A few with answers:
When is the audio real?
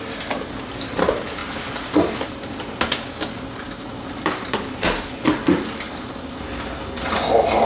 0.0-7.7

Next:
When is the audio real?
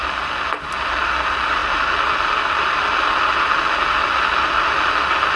0.0-5.4